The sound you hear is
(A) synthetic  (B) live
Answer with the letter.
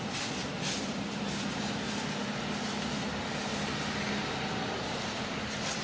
B